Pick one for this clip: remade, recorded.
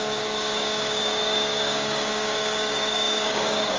remade